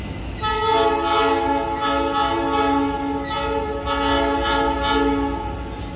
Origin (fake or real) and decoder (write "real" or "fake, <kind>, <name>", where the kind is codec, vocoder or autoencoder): real